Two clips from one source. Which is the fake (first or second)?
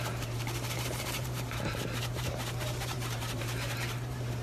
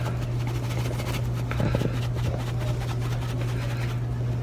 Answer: first